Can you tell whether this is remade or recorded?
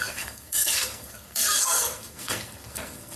remade